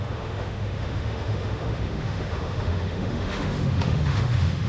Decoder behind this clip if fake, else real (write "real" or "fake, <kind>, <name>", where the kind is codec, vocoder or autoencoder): fake, autoencoder, DAC-VAE